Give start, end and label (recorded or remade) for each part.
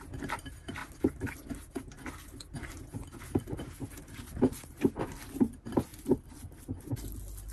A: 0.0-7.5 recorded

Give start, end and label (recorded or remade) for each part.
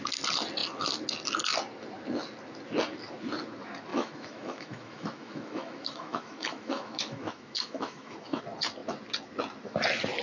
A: 0.0-3.9 recorded; 3.9-8.4 remade; 8.4-10.2 recorded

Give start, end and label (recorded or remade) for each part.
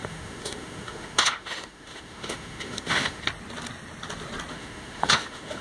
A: 0.0-3.2 remade; 3.2-4.5 recorded; 4.5-5.6 remade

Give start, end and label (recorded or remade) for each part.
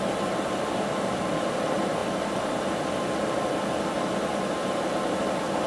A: 0.0-5.7 recorded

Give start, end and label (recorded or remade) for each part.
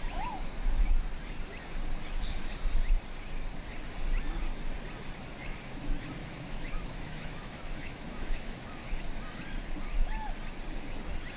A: 0.0-6.2 recorded; 6.2-9.0 remade; 9.0-11.4 recorded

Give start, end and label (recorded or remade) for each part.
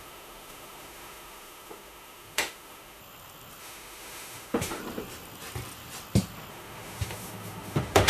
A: 0.0-3.0 remade; 3.0-3.6 recorded; 3.6-4.8 remade; 4.8-6.5 recorded; 6.5-8.1 remade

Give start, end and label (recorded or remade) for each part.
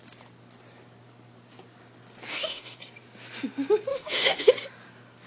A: 0.0-2.3 recorded; 2.3-2.8 remade; 2.8-3.9 recorded; 3.9-4.5 remade; 4.5-5.3 recorded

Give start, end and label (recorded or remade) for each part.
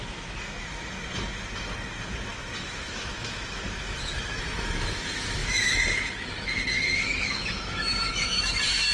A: 0.0-8.9 remade